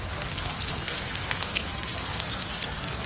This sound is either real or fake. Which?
fake